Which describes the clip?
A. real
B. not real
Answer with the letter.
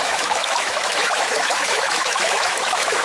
B